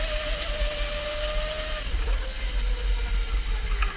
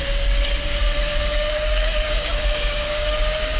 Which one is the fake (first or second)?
second